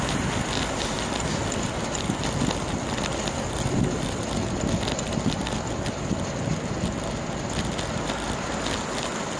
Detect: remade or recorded recorded